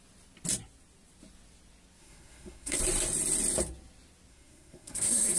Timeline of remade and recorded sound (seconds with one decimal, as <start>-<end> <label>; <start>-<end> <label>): 0.0-2.0 recorded; 2.0-2.8 remade; 2.8-4.3 recorded; 4.3-5.4 remade